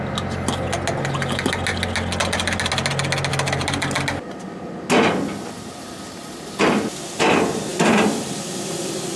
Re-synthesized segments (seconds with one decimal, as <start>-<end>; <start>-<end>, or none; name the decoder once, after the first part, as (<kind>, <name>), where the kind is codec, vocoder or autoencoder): none